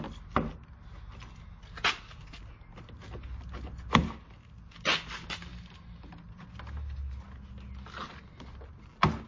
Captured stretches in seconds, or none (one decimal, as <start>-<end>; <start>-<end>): 0.0-9.3